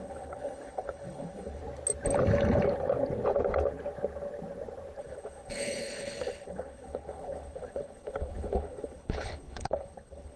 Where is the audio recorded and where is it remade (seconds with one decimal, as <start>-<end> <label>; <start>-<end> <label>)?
0.0-1.6 remade; 1.6-5.0 recorded; 5.0-10.4 remade